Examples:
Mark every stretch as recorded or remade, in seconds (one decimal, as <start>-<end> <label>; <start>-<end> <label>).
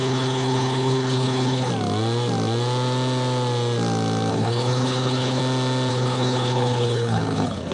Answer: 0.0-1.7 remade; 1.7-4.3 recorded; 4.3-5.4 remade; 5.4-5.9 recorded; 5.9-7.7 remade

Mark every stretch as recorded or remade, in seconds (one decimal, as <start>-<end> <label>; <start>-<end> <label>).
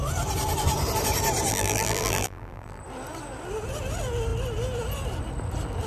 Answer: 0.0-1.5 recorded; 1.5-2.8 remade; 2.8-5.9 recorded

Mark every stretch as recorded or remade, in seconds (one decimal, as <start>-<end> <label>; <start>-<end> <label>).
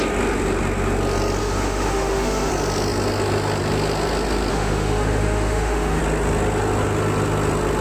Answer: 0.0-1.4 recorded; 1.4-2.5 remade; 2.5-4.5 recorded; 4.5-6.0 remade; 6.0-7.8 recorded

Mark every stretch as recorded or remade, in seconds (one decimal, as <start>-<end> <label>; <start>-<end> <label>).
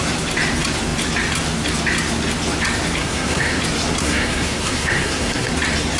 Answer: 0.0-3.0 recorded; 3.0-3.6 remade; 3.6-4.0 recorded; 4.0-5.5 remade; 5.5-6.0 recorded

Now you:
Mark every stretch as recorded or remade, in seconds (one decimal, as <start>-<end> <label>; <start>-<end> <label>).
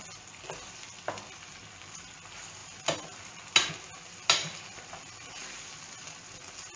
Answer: 0.0-6.8 recorded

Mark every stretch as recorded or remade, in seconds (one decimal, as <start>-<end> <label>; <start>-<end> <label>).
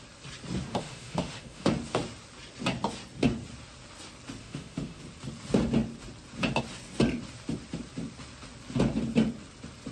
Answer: 0.0-0.7 recorded; 0.7-1.7 remade; 1.7-4.4 recorded; 4.4-5.0 remade; 5.0-9.9 recorded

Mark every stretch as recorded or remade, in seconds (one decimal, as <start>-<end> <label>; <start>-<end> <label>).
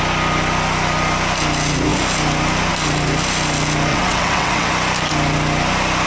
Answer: 0.0-3.9 recorded; 3.9-4.7 remade; 4.7-6.1 recorded